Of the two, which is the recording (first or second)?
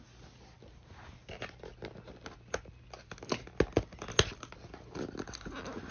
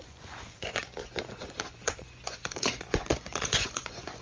first